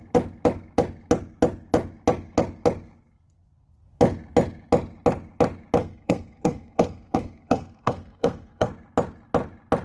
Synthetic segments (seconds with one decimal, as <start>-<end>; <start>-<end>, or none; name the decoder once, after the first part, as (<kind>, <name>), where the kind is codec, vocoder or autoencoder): 5.8-8.7 (codec, SNAC)